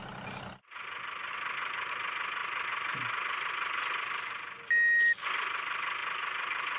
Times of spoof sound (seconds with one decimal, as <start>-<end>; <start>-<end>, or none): none